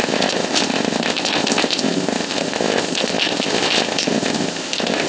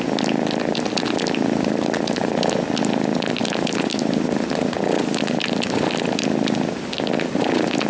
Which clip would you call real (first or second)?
second